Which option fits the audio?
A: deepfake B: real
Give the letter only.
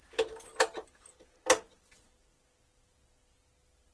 B